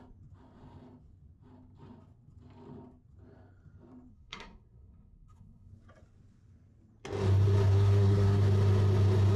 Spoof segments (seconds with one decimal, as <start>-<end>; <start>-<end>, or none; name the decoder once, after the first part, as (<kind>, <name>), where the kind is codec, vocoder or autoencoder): 4.1-5.7 (codec, SNAC); 7.7-8.4